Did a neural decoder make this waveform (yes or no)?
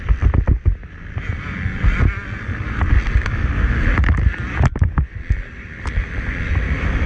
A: no